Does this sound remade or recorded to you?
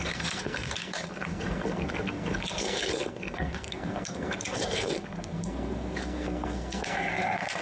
remade